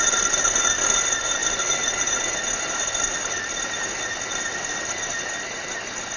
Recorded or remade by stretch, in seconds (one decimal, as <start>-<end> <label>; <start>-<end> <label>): 0.0-6.2 recorded